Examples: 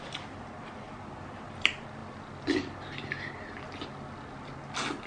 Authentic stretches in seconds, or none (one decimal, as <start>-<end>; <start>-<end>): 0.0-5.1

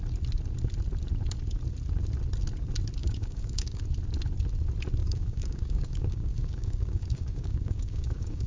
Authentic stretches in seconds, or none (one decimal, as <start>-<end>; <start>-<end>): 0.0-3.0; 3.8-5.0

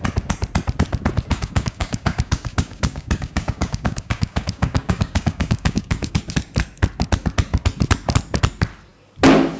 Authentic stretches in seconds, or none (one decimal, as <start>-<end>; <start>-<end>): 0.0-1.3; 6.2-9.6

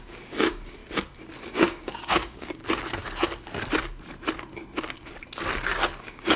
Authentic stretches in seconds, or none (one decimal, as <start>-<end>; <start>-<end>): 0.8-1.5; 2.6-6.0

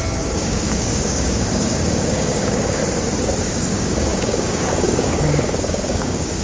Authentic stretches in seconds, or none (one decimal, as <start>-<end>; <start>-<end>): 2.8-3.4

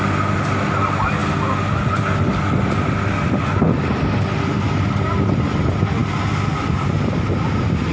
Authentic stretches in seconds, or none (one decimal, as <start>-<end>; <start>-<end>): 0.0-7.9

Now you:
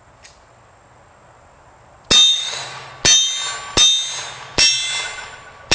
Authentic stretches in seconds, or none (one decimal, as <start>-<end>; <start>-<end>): 0.0-2.3; 2.9-5.7